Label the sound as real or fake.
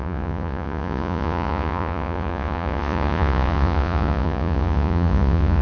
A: fake